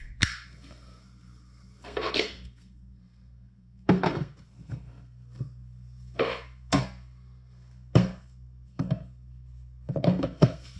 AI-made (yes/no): yes